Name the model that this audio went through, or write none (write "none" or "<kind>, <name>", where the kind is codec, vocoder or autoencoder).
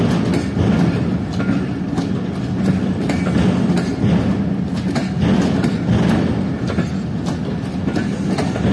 none